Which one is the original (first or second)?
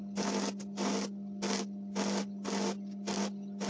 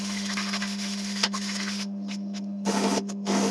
first